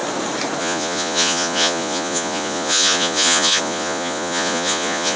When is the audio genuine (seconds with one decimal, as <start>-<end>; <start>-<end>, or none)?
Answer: 0.0-0.6